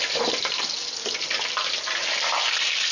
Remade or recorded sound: recorded